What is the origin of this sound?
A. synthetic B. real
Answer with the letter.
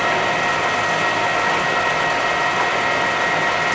B